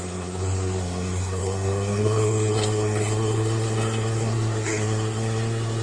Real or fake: fake